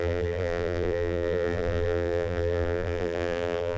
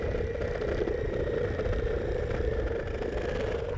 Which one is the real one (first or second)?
second